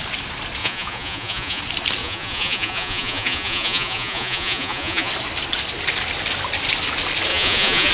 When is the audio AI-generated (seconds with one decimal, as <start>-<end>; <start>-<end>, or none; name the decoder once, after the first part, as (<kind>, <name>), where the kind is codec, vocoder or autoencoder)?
0.6-1.6 (vocoder, Vocos); 2.0-5.1; 7.3-7.9